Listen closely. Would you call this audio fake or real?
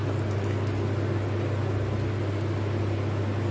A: real